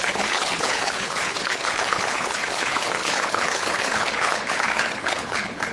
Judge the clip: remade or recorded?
remade